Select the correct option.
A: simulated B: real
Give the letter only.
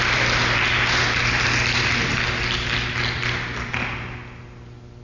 B